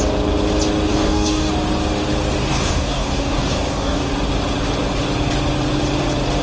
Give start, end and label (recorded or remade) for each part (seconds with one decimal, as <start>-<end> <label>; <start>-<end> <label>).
0.0-0.9 recorded; 0.9-1.5 remade; 1.5-2.5 recorded; 2.5-4.1 remade; 4.1-6.4 recorded